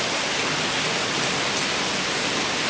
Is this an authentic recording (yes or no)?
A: yes